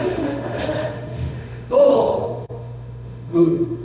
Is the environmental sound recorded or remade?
remade